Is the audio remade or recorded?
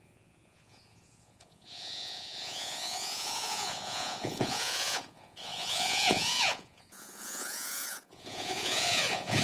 remade